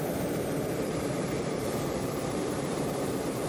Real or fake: fake